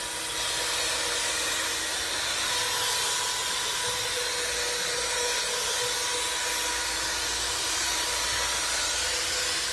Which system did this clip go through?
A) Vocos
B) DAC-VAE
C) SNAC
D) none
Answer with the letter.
D